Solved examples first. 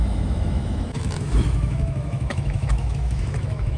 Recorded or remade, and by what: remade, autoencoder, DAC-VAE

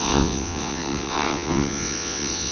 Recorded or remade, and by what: remade, vocoder, WaveNeXt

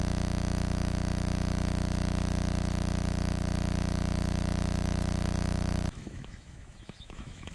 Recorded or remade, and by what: remade, autoencoder, DAC-VAE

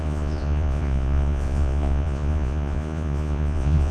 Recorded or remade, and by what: remade, vocoder, Vocos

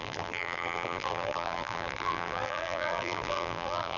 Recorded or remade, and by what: remade, vocoder, BigVGAN v2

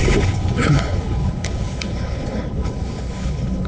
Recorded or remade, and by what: remade, codec, HILCodec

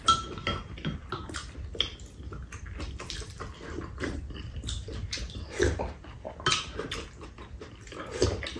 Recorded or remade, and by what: recorded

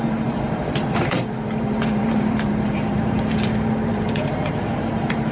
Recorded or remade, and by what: remade, vocoder, BigVGAN v2